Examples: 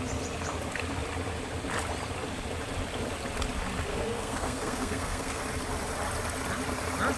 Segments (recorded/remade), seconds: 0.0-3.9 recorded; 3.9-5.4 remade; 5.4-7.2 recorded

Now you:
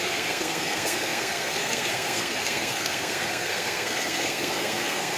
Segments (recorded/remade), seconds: 0.0-5.2 remade

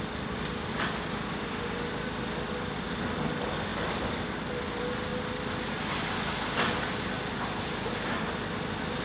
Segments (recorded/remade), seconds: 0.0-9.0 recorded